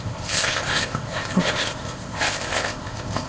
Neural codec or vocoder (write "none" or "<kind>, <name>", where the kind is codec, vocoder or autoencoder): codec, ZipCodec